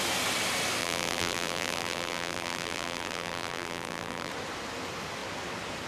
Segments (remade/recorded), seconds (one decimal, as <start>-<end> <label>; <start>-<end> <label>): 0.0-0.8 recorded; 0.8-4.3 remade; 4.3-5.9 recorded